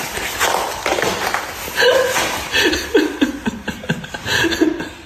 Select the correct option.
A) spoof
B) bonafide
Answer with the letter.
B